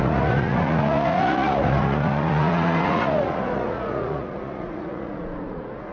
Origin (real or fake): fake